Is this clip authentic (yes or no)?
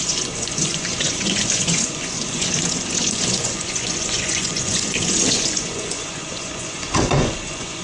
no